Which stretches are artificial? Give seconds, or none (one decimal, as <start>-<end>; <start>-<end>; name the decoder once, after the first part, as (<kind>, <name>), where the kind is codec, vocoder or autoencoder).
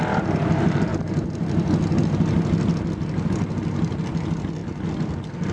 none